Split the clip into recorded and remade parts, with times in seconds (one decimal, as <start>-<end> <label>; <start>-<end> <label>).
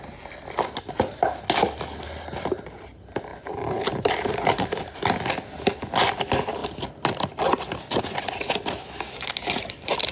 0.0-3.3 recorded; 3.3-4.9 remade; 4.9-10.1 recorded